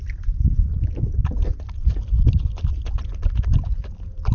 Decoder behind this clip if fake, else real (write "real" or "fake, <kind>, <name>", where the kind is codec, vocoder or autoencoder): real